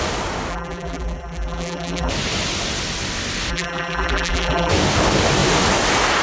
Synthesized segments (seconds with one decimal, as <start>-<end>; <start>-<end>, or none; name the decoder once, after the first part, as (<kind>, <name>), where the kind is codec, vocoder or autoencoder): 0.5-2.1 (vocoder, BigVGAN v2); 3.5-4.7